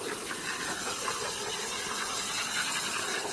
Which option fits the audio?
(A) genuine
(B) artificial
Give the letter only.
A